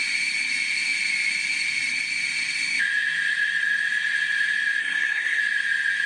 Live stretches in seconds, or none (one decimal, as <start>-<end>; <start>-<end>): 0.0-4.8; 5.4-6.1